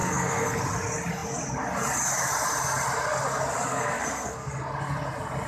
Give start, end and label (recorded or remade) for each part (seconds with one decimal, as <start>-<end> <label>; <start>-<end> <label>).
0.0-0.6 remade; 0.6-3.7 recorded; 3.7-4.5 remade; 4.5-5.5 recorded